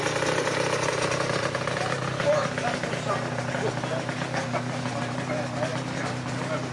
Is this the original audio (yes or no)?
yes